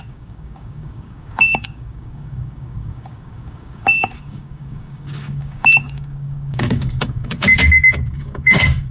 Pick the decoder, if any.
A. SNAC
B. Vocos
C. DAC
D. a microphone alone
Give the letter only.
C